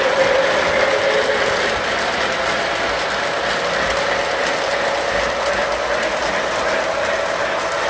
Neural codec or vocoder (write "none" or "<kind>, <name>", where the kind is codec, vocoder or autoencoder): none